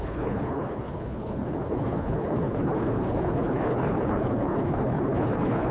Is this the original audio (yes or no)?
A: no